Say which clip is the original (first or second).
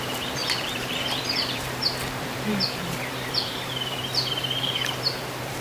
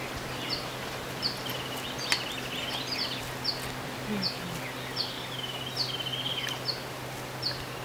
second